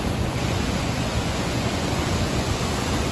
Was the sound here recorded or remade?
remade